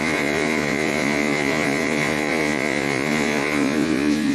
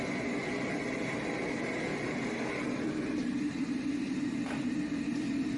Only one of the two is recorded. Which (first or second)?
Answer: second